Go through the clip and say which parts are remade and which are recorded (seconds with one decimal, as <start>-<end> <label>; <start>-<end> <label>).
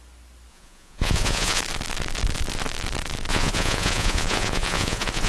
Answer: 0.0-0.5 recorded; 0.5-1.6 remade; 1.6-3.3 recorded; 3.3-5.3 remade